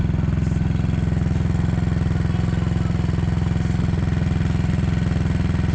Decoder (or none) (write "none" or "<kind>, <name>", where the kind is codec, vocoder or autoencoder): none